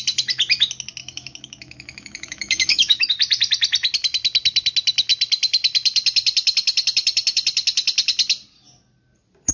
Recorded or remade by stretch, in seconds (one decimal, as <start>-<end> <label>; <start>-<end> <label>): 0.0-1.0 recorded; 1.0-3.1 remade; 3.1-9.5 recorded